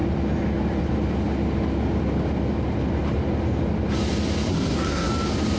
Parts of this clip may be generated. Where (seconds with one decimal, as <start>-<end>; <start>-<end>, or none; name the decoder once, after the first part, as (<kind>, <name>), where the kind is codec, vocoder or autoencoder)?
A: 4.5-5.1 (codec, SNAC)